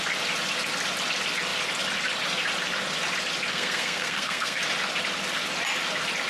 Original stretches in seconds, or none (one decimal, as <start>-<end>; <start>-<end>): 0.0-3.5; 4.6-6.3

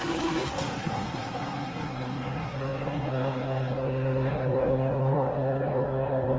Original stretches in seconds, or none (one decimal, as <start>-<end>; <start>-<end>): none

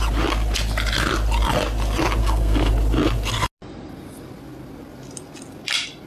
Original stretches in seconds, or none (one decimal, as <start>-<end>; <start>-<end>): 0.0-2.2; 2.7-6.1

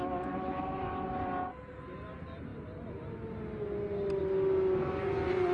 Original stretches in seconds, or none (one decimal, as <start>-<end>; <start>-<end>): 0.0-5.5

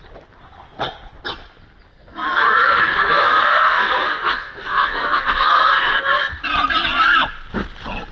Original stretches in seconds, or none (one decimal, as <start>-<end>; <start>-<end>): 0.0-1.9; 6.4-8.1

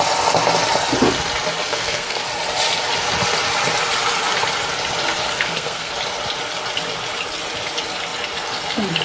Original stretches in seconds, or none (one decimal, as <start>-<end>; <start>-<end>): 0.0-1.7; 2.2-5.3; 5.9-9.0